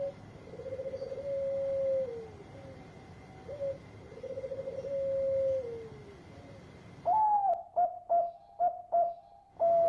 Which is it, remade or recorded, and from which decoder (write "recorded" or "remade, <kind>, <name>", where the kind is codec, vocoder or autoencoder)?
recorded